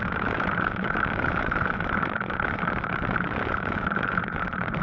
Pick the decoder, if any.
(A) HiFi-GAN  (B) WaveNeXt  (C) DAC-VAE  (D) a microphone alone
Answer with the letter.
C